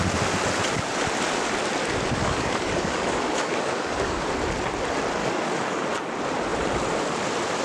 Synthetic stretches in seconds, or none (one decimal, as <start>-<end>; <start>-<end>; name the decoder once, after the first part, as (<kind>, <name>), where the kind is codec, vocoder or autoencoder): 2.2-4.3 (codec, DAC); 5.2-6.1